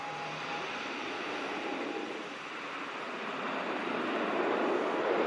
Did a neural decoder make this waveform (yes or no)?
no